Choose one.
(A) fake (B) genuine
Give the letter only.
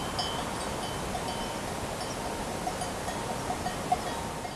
B